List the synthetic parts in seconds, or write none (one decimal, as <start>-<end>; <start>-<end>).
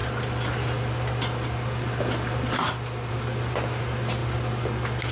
none